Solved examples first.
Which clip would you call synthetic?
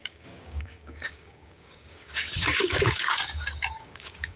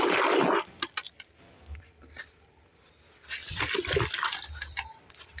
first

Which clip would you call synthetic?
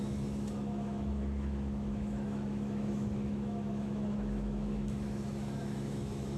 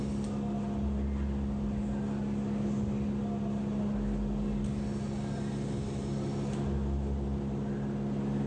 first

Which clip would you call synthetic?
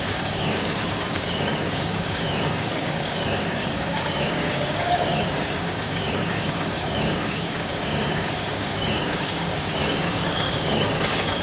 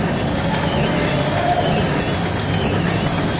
first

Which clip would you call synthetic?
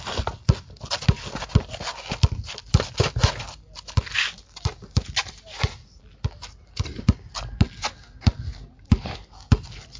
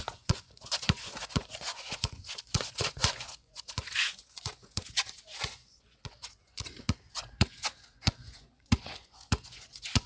second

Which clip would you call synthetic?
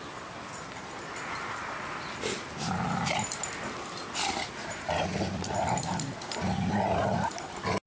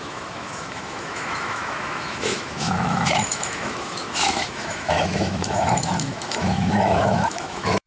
second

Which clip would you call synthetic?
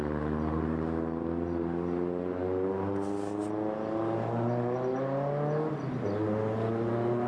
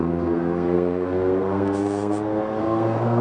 second